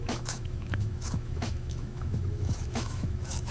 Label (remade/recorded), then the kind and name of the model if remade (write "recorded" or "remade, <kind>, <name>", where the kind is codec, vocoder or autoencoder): remade, autoencoder, DAC-VAE